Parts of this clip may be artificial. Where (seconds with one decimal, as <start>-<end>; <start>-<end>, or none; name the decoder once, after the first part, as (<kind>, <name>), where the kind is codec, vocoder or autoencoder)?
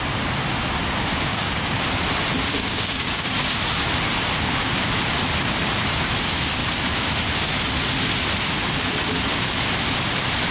1.3-1.8 (codec, DAC); 2.6-3.3